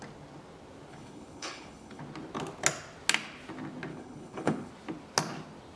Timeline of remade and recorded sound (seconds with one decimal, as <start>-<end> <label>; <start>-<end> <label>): 0.0-0.9 recorded; 0.9-2.0 remade; 2.0-3.9 recorded; 3.9-4.7 remade; 4.7-5.8 recorded